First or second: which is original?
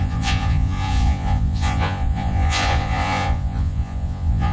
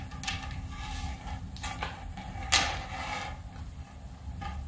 second